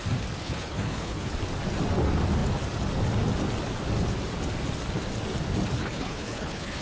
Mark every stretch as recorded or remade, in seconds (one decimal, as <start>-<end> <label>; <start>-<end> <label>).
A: 0.0-0.4 recorded; 0.4-1.3 remade; 1.3-5.8 recorded; 5.8-6.8 remade